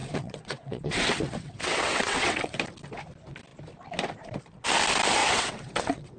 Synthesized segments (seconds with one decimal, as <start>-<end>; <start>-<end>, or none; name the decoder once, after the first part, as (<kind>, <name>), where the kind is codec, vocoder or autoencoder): 0.0-2.6 (vocoder, WaveNeXt); 5.2-6.2